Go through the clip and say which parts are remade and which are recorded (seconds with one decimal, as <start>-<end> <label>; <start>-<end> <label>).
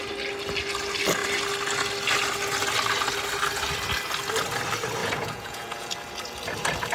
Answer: 0.0-5.0 recorded; 5.0-5.9 remade; 5.9-6.9 recorded